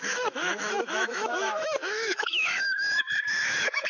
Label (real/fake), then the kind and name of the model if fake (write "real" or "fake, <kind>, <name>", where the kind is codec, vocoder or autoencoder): fake, autoencoder, DAC-VAE